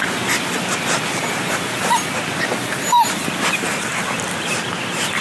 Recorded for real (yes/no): yes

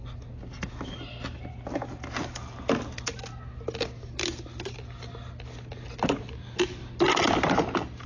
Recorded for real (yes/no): yes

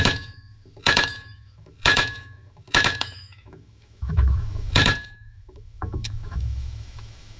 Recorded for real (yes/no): no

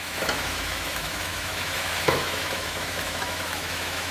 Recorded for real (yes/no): no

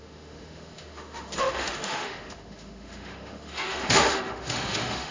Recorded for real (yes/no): no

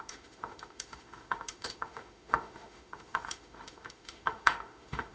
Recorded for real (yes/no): no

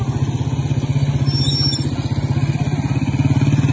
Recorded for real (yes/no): yes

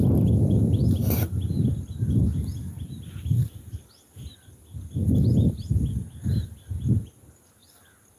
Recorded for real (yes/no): yes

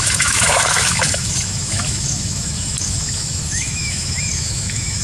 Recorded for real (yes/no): no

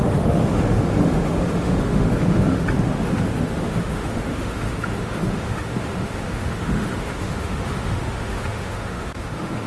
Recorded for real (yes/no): no